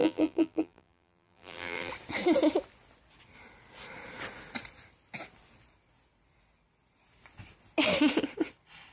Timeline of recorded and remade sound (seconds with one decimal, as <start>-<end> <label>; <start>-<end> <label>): 0.0-1.9 remade; 1.9-8.9 recorded